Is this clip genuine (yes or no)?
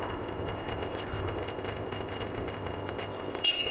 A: no